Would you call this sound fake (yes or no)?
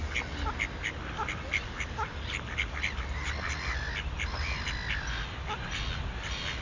no